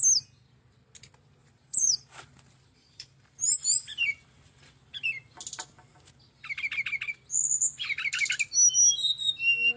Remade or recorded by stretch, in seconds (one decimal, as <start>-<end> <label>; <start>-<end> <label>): 0.0-1.4 recorded; 1.4-4.6 remade; 4.6-9.8 recorded